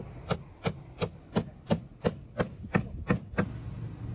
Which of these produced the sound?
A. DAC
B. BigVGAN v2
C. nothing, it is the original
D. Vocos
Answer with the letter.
C